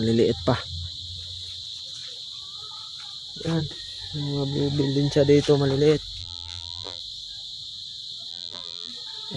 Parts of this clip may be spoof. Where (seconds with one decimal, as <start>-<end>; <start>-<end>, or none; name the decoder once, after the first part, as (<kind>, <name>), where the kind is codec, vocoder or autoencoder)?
6.2-7.0 (vocoder, BigVGAN v2); 8.3-8.9